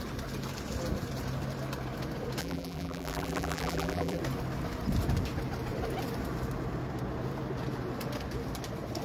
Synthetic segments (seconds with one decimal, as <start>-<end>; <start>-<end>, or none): 2.4-4.2